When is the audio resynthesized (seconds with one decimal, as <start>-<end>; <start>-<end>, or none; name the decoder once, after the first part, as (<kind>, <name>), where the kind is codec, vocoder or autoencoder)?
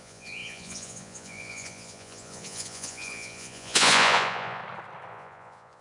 0.0-4.6 (vocoder, Vocos); 5.1-5.8